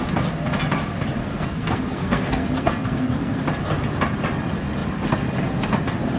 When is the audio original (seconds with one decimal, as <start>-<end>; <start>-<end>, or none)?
0.0-1.2; 3.4-6.2